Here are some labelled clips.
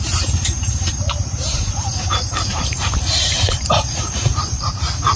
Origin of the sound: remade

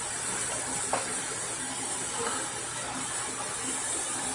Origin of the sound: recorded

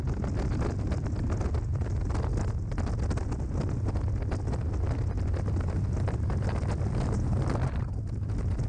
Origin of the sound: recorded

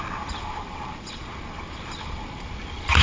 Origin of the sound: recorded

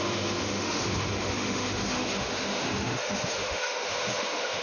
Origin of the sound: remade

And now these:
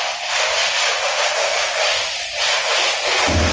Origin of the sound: recorded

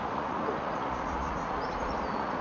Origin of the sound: remade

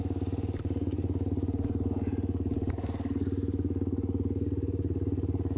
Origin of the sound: remade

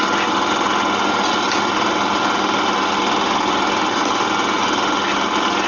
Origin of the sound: recorded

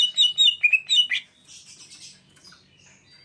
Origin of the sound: recorded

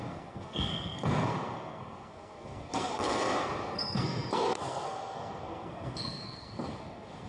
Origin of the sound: remade